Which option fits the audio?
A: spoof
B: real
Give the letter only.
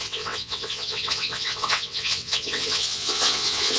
A